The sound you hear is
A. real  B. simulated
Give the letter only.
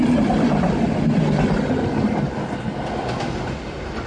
A